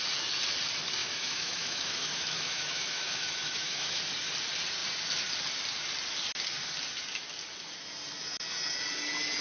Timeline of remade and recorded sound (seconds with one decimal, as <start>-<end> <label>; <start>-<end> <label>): 0.0-1.0 recorded; 1.0-4.0 remade; 4.0-9.4 recorded